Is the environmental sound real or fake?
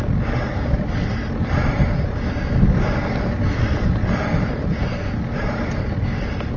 real